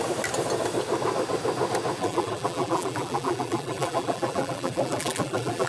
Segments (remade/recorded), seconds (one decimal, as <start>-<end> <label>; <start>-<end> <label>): 0.0-2.0 recorded; 2.0-5.7 remade